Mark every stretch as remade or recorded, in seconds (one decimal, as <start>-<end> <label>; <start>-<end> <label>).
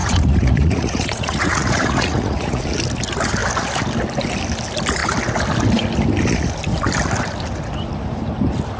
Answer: 0.0-2.6 remade; 2.6-8.8 recorded